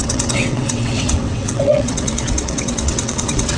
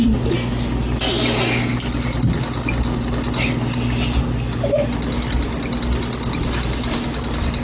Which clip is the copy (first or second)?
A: first